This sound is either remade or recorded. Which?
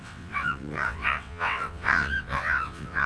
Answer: remade